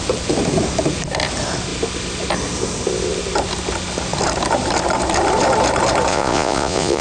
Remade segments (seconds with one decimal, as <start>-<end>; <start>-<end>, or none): 6.1-7.0